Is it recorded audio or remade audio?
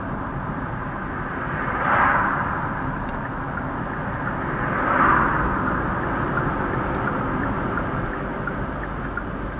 recorded